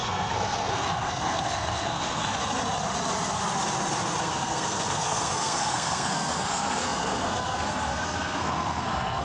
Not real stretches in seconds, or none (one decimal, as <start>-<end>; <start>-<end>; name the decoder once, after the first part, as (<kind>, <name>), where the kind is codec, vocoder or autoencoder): 0.0-2.4 (codec, SNAC); 4.2-9.2